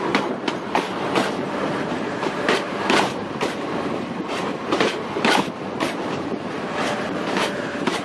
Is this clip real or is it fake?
fake